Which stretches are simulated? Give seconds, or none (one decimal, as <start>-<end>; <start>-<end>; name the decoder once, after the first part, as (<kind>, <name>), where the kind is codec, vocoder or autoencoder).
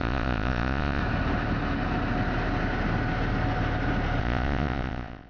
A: 0.0-1.0 (vocoder, Vocos); 4.2-5.3